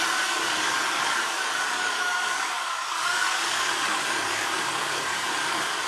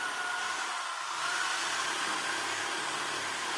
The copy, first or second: first